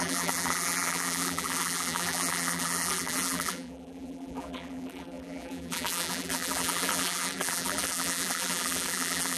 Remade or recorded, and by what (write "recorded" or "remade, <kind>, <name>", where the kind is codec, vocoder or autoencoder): remade, vocoder, BigVGAN v2